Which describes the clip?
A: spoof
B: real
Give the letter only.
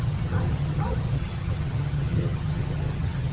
A